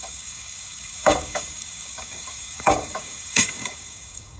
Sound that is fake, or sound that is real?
fake